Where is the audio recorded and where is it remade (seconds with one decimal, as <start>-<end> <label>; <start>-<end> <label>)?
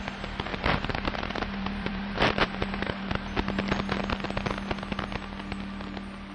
0.0-0.5 recorded; 0.5-3.1 remade; 3.1-6.3 recorded